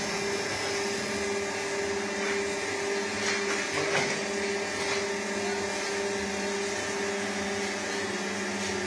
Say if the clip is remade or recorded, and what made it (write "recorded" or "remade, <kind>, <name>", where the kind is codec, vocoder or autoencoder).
recorded